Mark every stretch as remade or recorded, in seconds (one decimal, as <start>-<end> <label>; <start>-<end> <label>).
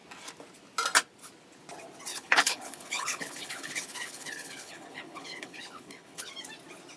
0.0-2.1 recorded; 2.1-6.3 remade; 6.3-7.0 recorded